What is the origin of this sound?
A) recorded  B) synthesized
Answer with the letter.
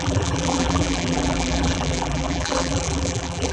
B